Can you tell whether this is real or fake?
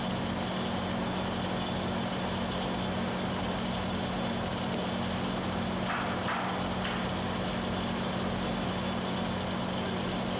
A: real